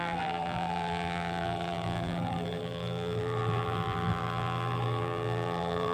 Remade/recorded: remade